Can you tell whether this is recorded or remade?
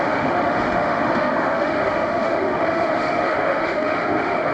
remade